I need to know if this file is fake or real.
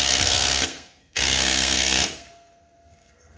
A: fake